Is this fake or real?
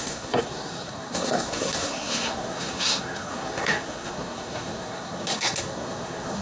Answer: fake